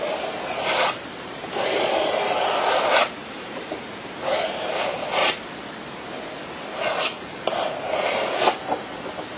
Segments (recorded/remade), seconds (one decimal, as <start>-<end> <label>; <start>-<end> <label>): 0.0-5.2 remade; 5.2-9.4 recorded